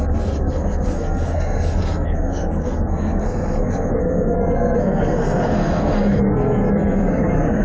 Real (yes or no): no